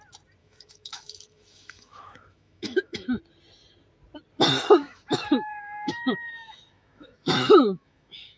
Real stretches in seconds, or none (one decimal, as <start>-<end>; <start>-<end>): 0.0-0.4; 3.2-4.8